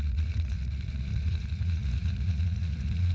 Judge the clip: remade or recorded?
remade